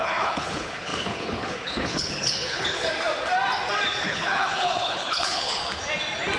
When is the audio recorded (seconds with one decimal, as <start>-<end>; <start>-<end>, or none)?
2.9-4.0; 5.6-6.4